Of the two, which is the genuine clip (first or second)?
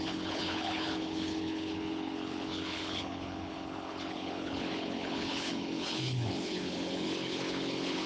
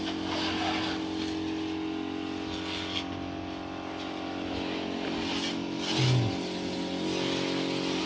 second